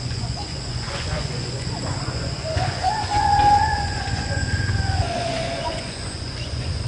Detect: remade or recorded remade